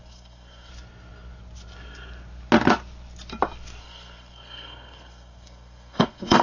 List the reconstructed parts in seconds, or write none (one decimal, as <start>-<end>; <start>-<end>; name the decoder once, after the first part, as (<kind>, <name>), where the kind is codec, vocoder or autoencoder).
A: 0.0-0.7 (codec, SNAC); 3.8-6.4